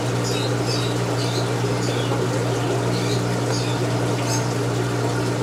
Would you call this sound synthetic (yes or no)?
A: no